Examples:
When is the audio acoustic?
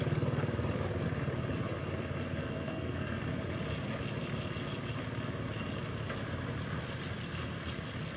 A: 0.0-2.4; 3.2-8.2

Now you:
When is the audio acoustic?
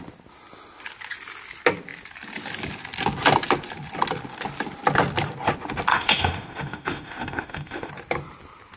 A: 0.0-5.9; 7.9-8.8